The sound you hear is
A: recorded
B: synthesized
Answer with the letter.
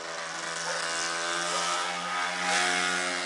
A